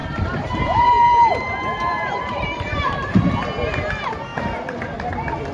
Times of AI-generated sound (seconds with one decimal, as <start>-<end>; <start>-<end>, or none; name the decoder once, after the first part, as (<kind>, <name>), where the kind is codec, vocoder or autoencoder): 0.0-3.3 (vocoder, BigVGAN v2)

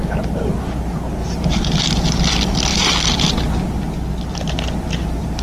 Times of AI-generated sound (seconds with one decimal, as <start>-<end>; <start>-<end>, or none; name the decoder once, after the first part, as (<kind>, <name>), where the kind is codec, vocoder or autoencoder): 1.2-1.8 (vocoder, BigVGAN v2)

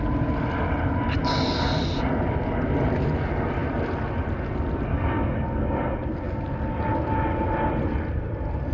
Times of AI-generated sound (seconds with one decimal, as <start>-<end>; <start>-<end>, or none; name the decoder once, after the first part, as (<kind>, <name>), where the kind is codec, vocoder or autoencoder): none